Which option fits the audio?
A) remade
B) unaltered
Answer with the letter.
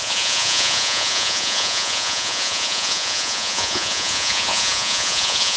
A